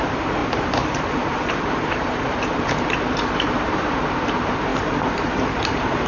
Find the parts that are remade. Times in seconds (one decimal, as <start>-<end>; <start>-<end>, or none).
0.0-6.1